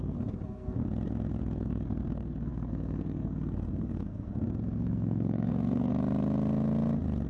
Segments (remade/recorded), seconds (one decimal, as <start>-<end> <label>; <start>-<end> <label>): 0.0-0.8 remade; 0.8-1.4 recorded; 1.4-5.9 remade; 5.9-7.3 recorded